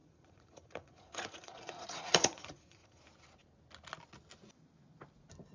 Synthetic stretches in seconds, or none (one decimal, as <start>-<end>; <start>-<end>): 0.0-3.0